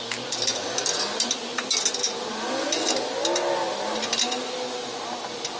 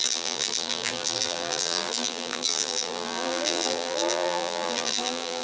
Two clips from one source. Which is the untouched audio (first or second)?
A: first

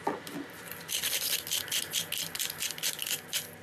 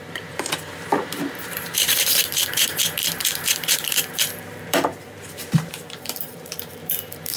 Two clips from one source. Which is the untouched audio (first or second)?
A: first